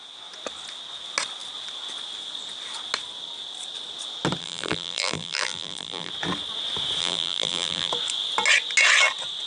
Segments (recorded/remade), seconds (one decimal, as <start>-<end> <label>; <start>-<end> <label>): 0.0-4.4 recorded; 4.4-6.1 remade; 6.1-7.0 recorded; 7.0-7.9 remade; 7.9-9.5 recorded